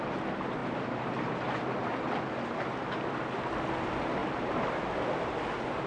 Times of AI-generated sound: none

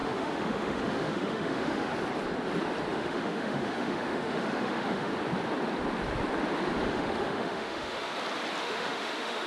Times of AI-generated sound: 0.0-1.9 (autoencoder, DAC-VAE); 2.9-5.1; 6.9-8.1; 8.6-9.5

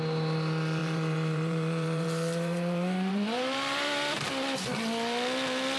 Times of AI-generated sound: 0.8-4.3 (vocoder, BigVGAN v2)

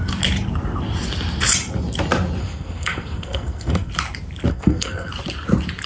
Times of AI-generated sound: 2.4-3.9 (codec, SNAC); 4.5-5.1

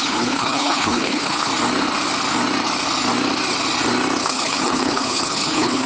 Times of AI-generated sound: 0.0-1.5 (codec, HILCodec); 4.2-5.9

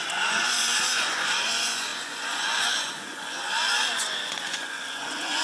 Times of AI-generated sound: 0.0-5.4 (vocoder, Vocos)

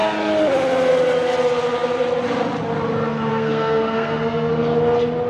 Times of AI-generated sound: 3.3-4.5 (codec, SNAC)

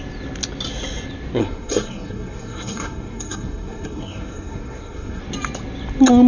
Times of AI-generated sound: 1.4-5.2 (codec, SNAC)